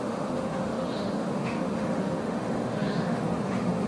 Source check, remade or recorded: remade